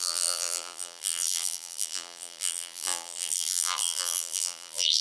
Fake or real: fake